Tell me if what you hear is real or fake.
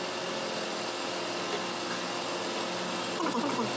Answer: real